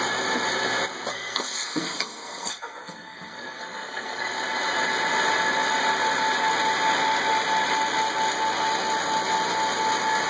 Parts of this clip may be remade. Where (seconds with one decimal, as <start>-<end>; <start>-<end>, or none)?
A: 1.1-4.3